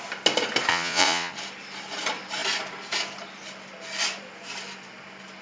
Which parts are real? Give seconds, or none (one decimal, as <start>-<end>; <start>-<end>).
0.0-0.7; 1.3-5.4